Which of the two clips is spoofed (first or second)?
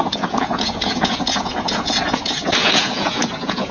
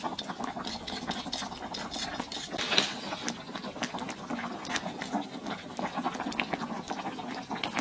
first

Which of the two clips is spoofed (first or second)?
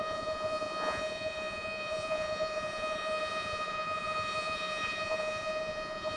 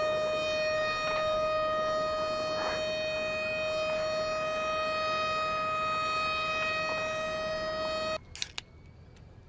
first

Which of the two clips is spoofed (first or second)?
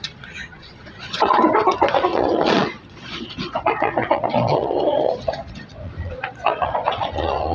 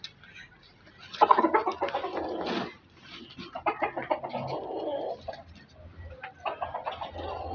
first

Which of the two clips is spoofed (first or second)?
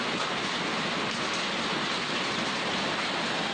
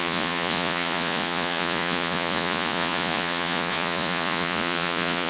second